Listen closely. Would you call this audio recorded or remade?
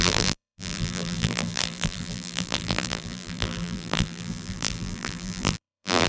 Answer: remade